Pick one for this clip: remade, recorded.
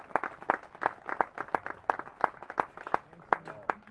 recorded